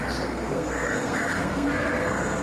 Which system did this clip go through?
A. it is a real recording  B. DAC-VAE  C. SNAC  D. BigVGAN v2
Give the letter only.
C